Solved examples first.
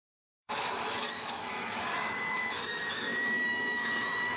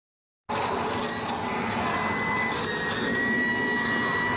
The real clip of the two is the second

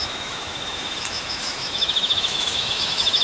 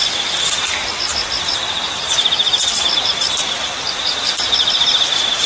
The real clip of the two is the second